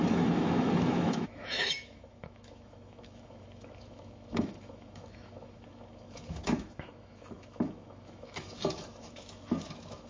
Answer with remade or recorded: remade